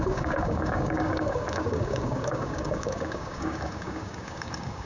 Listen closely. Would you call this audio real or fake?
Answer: fake